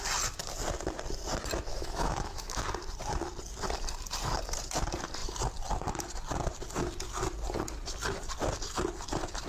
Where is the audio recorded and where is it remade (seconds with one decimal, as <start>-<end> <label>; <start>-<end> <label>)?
0.0-1.7 recorded; 1.7-2.6 remade; 2.6-9.5 recorded

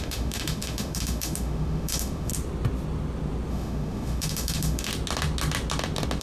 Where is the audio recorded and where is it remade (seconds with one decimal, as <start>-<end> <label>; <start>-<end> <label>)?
0.0-2.3 remade; 2.3-3.5 recorded; 3.5-4.9 remade; 4.9-6.2 recorded

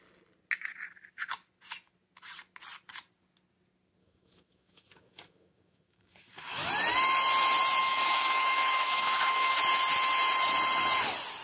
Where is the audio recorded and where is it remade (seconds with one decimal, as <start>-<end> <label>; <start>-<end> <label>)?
0.0-4.0 recorded; 4.0-6.7 remade; 6.7-7.8 recorded; 7.8-9.5 remade; 9.5-11.4 recorded